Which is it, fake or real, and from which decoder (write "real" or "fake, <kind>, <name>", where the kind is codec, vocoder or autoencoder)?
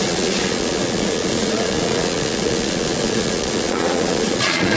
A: fake, vocoder, Vocos